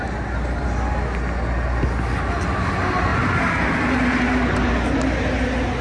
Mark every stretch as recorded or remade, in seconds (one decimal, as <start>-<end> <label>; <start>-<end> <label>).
0.0-5.8 recorded